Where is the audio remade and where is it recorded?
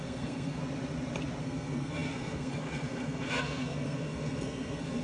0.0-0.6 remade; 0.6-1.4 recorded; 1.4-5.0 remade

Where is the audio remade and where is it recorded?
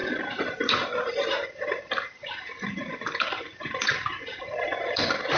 0.0-5.4 remade